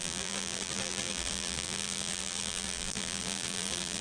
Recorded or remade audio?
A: remade